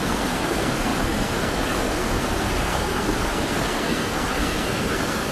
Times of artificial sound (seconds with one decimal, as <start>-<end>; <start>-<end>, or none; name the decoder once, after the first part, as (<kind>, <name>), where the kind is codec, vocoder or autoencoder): 0.0-5.3 (codec, SNAC)